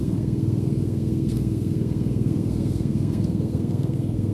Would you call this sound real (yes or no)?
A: no